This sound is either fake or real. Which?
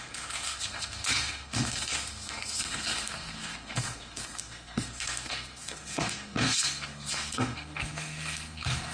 fake